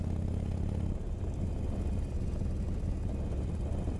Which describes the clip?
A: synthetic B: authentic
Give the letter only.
B